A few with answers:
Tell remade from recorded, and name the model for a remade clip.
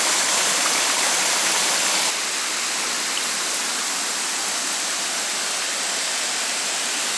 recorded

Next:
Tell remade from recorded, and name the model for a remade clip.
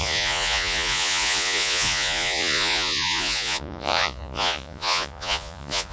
remade, vocoder, Vocos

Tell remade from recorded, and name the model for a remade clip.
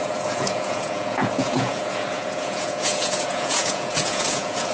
remade, vocoder, Vocos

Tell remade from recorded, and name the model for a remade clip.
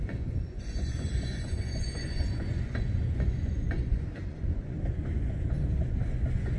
remade, vocoder, Vocos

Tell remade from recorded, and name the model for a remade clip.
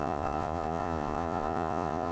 remade, vocoder, Vocos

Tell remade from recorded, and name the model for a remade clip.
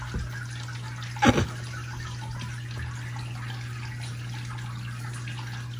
recorded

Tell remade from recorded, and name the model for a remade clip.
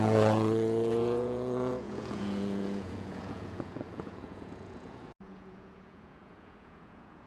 remade, vocoder, Vocos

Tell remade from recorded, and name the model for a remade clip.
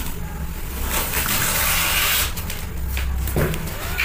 recorded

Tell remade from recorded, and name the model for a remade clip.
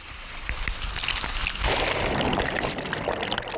recorded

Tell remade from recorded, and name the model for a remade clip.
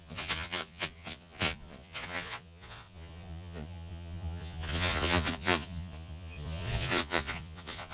remade, vocoder, Vocos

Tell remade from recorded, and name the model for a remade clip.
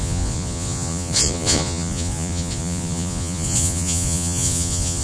remade, vocoder, Vocos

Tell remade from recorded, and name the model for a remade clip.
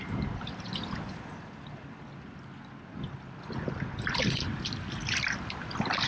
recorded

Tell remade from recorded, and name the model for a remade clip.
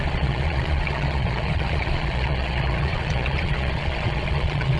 remade, vocoder, Vocos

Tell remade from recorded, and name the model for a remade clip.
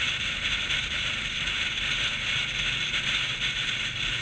recorded